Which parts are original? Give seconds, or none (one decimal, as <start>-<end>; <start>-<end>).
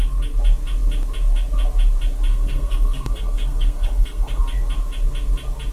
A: 0.0-2.3; 4.4-5.7